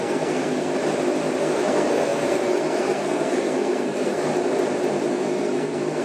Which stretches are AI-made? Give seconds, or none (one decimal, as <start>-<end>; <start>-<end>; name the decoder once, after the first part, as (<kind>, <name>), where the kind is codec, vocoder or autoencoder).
0.0-0.7 (codec, SNAC); 1.4-4.3; 5.1-6.0